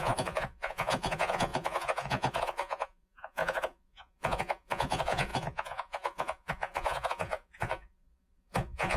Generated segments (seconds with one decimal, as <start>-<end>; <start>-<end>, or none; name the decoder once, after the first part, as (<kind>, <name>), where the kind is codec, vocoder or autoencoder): 0.0-9.0 (vocoder, Vocos)